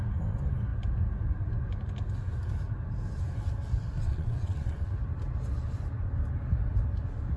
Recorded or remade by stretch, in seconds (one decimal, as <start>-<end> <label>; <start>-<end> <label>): 0.0-4.0 recorded; 4.0-4.9 remade; 4.9-7.4 recorded